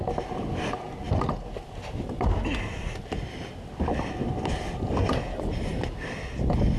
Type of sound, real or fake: real